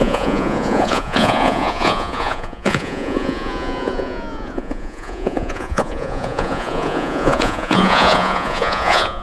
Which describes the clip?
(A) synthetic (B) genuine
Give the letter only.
A